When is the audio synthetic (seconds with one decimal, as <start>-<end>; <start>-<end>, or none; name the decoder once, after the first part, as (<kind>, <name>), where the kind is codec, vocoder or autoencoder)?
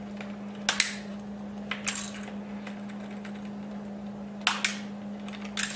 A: none